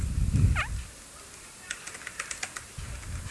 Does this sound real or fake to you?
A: real